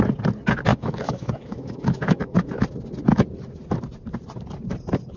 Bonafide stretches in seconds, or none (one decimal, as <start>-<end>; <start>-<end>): 0.0-0.7; 2.5-5.2